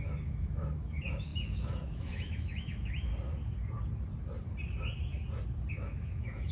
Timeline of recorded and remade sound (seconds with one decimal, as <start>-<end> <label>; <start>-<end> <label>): 0.0-3.1 remade; 3.1-5.7 recorded; 5.7-6.5 remade